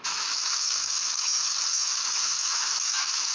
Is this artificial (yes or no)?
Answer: yes